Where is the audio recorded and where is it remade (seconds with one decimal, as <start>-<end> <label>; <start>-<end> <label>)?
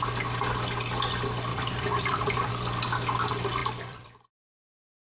0.0-1.5 recorded; 1.5-2.5 remade; 2.5-3.6 recorded; 3.6-5.0 remade